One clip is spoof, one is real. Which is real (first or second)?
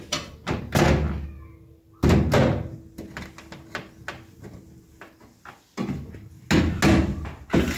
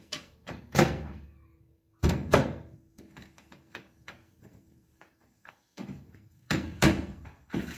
first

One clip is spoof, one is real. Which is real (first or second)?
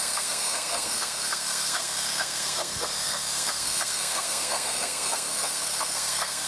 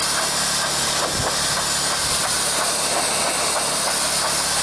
second